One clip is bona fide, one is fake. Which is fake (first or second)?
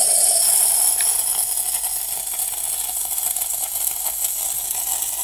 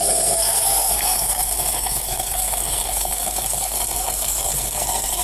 second